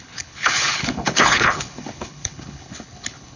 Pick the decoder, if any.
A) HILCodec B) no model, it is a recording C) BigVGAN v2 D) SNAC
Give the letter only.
A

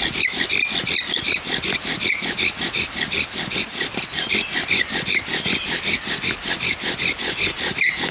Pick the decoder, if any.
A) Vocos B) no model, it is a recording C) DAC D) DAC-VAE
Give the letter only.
B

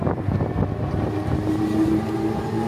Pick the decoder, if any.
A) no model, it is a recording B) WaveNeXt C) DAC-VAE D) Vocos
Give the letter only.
A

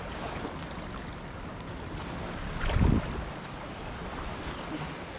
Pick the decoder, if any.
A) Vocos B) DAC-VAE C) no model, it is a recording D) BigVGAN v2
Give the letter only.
C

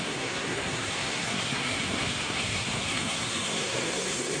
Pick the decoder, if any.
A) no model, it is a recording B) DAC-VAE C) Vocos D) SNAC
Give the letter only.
D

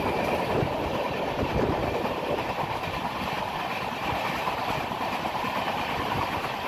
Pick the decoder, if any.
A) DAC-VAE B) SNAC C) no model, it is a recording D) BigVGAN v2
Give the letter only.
D